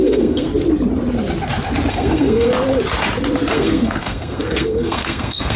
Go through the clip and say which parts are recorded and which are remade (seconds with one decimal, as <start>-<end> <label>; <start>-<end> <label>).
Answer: 0.0-0.5 remade; 0.5-1.9 recorded; 1.9-2.5 remade; 2.5-3.5 recorded; 3.5-5.6 remade